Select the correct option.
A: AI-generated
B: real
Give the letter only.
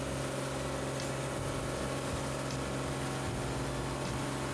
B